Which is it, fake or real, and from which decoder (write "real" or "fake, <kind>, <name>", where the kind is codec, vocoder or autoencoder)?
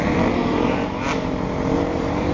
fake, vocoder, BigVGAN v2